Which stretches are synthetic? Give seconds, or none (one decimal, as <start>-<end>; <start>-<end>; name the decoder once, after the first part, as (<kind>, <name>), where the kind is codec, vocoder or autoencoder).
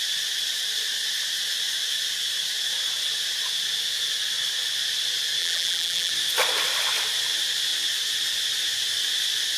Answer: 5.4-6.1 (vocoder, BigVGAN v2)